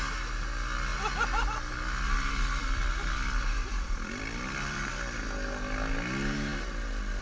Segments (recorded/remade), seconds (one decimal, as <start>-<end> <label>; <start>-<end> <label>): 0.0-2.6 recorded; 2.6-4.9 remade; 4.9-7.2 recorded